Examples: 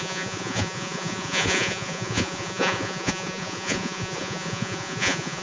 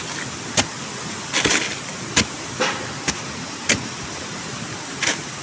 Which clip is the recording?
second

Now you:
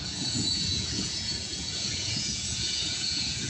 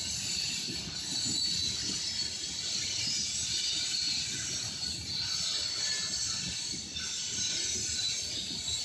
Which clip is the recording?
second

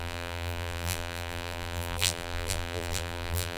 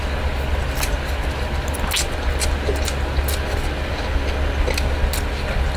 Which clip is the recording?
second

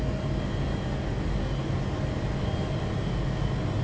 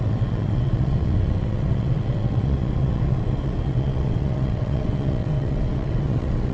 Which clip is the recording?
first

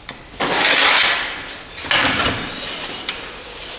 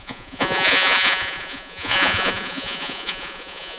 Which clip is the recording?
first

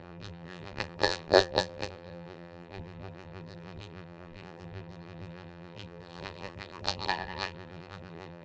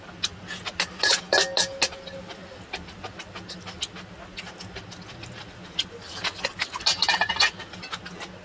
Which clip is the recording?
second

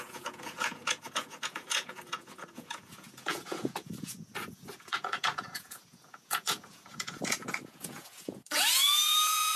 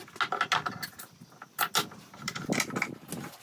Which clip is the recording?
second